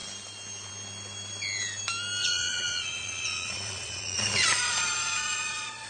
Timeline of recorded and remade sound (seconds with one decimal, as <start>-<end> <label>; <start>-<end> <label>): 0.0-2.2 recorded; 2.2-5.9 remade